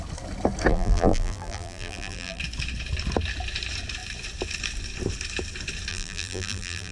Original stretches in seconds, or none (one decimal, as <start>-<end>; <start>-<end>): 0.0-0.7; 2.4-5.9